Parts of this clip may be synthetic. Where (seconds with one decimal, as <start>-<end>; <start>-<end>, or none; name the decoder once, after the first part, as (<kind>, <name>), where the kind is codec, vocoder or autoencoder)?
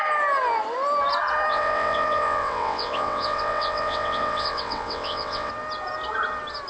1.5-5.5 (vocoder, WaveNeXt)